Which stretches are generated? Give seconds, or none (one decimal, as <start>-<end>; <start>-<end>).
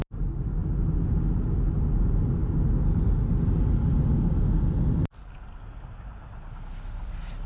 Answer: none